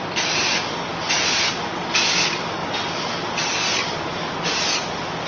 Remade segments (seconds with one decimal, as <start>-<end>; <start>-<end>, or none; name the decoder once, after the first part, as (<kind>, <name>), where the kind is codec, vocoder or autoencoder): none

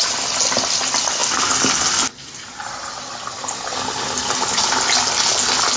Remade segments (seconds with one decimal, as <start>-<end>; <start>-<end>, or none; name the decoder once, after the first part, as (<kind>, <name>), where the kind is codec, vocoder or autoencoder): none